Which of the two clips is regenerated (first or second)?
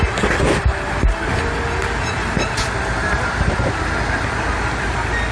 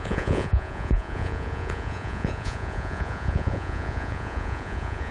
second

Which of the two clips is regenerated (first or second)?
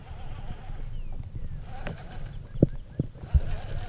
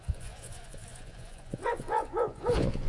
second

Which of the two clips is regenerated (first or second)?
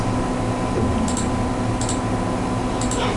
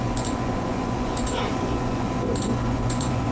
second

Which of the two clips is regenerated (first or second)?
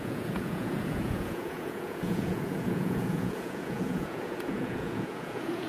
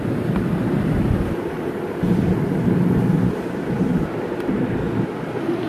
first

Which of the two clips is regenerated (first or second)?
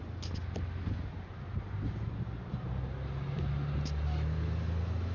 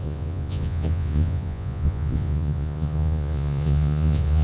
second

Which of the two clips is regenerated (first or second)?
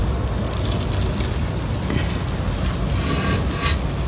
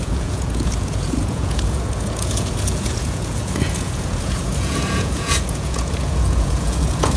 second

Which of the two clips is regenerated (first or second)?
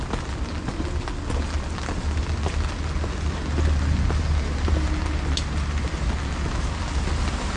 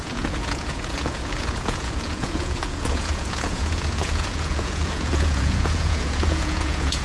second